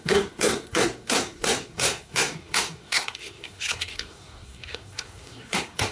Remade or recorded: remade